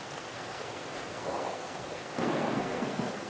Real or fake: fake